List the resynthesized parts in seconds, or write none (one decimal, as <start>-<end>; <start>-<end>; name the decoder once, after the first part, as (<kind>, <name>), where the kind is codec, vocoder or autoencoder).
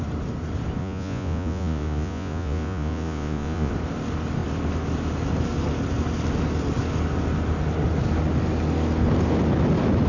0.8-3.7 (vocoder, Vocos)